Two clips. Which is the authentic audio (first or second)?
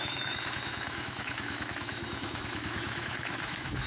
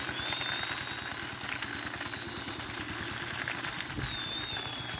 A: second